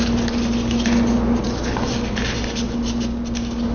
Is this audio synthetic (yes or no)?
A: no